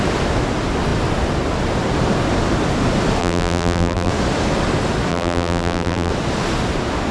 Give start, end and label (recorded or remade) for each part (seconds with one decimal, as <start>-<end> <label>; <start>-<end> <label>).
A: 0.0-3.2 recorded; 3.2-4.1 remade; 4.1-5.1 recorded; 5.1-6.1 remade; 6.1-7.1 recorded